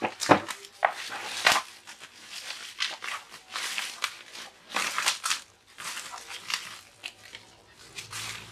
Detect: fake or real fake